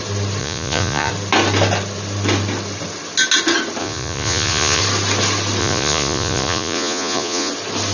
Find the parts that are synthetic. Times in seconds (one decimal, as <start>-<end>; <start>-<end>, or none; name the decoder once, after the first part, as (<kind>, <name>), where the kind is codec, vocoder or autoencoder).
0.4-1.1 (vocoder, Vocos); 3.8-4.8; 5.6-7.5